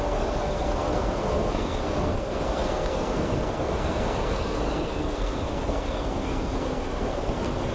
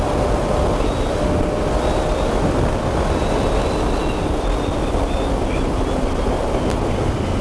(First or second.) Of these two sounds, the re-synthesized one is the first